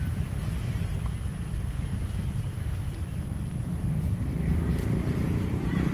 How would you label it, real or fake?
fake